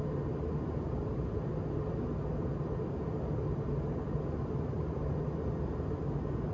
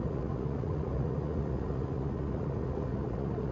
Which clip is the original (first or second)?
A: first